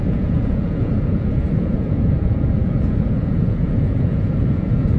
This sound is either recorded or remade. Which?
remade